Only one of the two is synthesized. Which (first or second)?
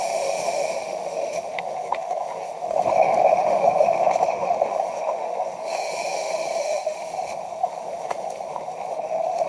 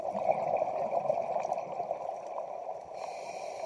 first